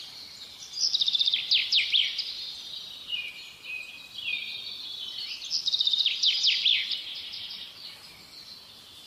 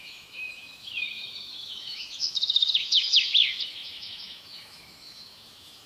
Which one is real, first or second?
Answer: first